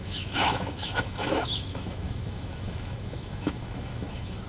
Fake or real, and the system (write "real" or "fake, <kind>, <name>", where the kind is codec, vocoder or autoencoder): fake, autoencoder, DAC-VAE